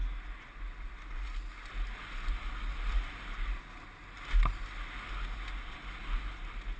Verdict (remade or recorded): recorded